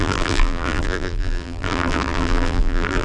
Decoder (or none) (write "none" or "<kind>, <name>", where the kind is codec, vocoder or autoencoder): vocoder, BigVGAN v2